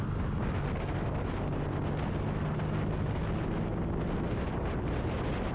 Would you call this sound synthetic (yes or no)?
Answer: no